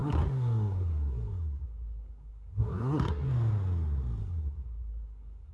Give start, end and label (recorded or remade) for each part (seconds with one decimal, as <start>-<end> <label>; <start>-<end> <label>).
0.0-3.3 remade; 3.3-4.2 recorded; 4.2-5.5 remade